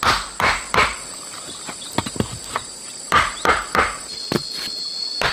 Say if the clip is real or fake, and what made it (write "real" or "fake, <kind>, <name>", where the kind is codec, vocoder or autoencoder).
fake, vocoder, BigVGAN v2